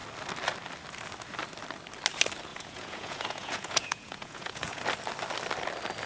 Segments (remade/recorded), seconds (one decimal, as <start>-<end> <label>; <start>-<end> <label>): 0.0-2.5 recorded; 2.5-4.8 remade; 4.8-6.1 recorded